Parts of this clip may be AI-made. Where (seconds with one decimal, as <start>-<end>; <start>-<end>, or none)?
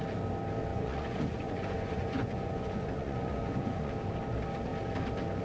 0.7-3.9